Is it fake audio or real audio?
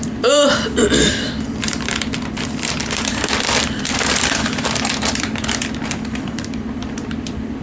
fake